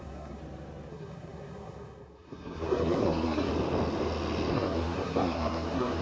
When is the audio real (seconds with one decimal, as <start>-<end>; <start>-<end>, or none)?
0.4-0.9; 3.5-4.5